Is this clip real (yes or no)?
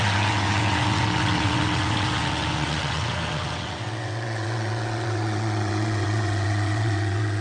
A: no